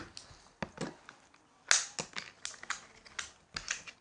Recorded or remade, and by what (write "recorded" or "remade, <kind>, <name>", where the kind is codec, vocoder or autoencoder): recorded